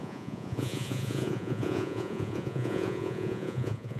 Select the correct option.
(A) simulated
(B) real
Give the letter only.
A